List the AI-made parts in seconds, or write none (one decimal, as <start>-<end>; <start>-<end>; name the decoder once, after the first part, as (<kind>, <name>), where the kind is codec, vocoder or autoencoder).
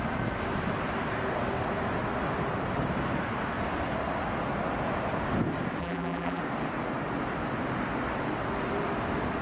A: 5.8-6.4 (vocoder, BigVGAN v2)